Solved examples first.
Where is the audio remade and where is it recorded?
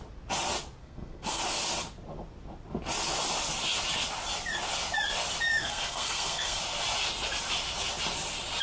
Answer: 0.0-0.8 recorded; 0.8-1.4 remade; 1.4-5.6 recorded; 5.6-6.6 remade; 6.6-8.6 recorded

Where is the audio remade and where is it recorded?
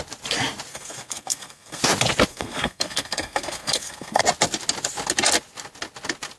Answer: 0.0-0.7 recorded; 0.7-1.8 remade; 1.8-2.3 recorded; 2.3-4.2 remade; 4.2-6.4 recorded